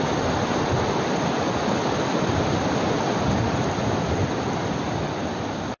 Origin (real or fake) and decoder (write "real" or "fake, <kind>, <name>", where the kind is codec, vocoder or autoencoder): real